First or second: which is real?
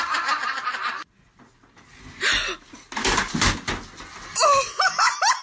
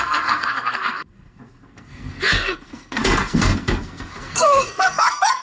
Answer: first